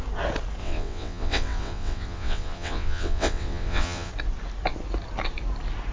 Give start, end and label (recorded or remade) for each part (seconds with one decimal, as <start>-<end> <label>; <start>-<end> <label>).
0.0-0.6 recorded; 0.6-4.1 remade; 4.1-5.9 recorded